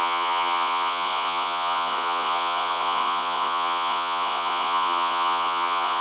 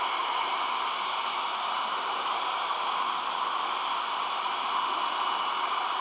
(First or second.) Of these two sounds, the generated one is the first